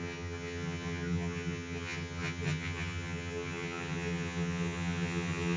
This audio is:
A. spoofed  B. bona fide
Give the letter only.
A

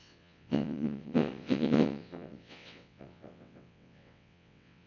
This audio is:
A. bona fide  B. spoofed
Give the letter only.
B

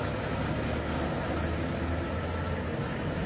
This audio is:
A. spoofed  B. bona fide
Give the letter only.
B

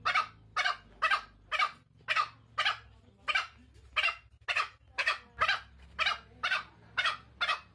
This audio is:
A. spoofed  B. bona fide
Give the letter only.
B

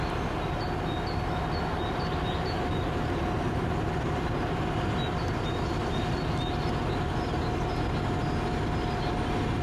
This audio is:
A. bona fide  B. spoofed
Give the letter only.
A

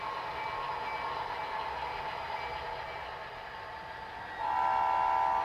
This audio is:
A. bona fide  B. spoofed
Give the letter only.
A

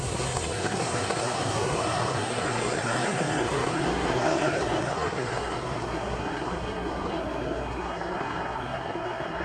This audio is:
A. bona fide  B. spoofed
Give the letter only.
B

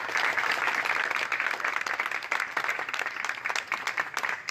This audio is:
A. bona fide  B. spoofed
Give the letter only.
A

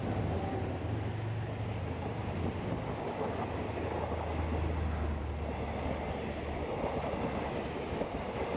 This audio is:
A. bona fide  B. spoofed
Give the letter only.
A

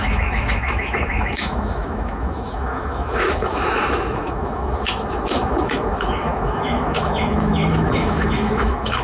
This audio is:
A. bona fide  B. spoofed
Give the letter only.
B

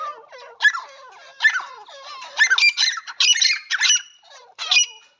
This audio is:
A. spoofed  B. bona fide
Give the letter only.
B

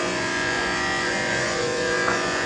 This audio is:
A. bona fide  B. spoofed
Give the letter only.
B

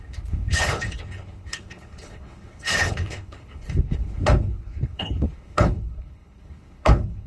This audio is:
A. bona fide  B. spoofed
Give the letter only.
B